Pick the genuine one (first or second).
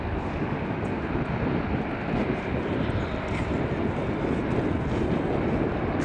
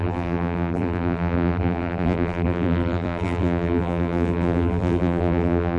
first